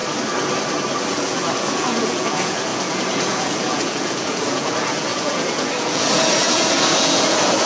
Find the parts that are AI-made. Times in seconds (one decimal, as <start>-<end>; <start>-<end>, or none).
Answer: 1.1-7.7

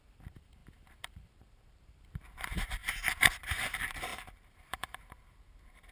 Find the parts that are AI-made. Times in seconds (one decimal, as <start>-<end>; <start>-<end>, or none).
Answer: 0.0-5.9

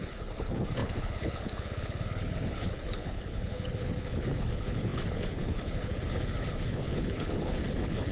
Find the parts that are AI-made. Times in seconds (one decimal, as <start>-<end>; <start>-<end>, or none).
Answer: 0.0-8.1

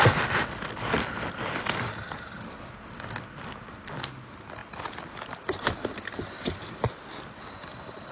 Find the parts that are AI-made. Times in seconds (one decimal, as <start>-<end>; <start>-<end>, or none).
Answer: none

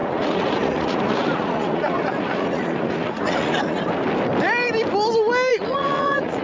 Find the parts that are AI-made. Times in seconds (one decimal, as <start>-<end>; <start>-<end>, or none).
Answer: 0.0-3.8; 5.5-6.4

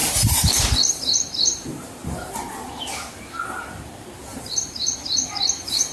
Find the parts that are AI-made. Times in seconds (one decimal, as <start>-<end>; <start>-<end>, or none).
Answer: 0.0-2.3; 4.3-5.9

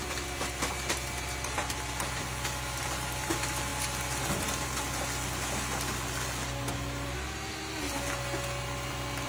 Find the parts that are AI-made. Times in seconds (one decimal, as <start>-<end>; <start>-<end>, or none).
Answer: 0.0-3.7; 8.9-9.3

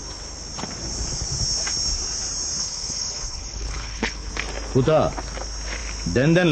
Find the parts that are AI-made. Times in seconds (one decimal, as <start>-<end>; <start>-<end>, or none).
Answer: 2.6-4.3